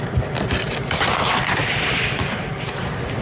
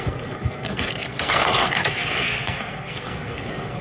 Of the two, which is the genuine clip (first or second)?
first